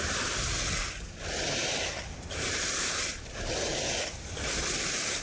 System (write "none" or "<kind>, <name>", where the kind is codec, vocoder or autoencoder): none